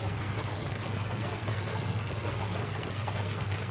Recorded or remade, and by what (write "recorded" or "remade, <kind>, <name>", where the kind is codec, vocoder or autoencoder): remade, codec, SNAC